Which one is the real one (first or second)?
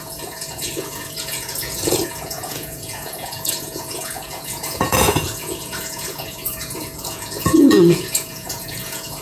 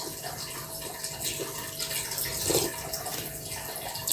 second